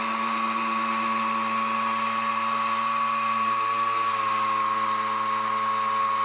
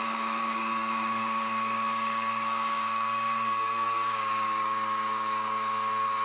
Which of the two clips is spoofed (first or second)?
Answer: second